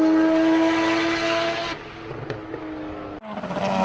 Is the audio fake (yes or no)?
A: no